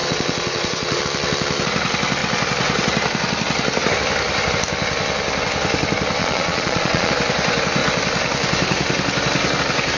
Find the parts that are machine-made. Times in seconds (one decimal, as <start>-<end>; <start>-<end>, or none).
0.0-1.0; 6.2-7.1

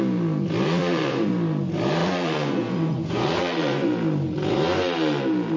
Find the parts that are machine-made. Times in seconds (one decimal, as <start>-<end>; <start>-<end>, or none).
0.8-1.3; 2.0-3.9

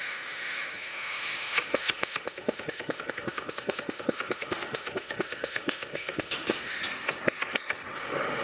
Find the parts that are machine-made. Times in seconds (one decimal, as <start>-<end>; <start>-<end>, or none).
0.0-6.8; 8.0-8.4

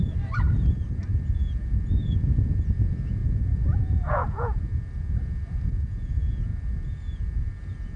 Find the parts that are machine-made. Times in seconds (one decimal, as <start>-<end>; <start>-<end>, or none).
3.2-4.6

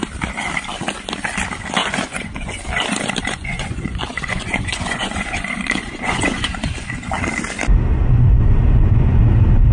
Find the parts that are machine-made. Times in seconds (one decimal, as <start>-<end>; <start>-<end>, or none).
1.8-2.6; 3.2-7.1; 7.9-9.2